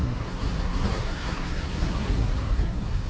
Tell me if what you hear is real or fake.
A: fake